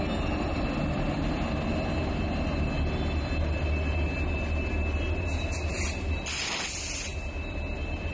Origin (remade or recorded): recorded